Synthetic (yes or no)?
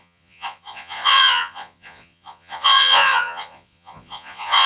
yes